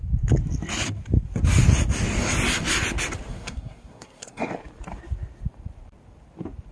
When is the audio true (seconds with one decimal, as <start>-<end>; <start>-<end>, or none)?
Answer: 0.0-3.3; 4.5-6.7